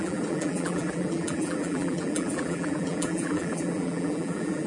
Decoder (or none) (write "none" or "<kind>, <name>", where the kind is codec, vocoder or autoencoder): vocoder, BigVGAN v2